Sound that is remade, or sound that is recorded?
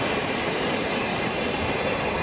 recorded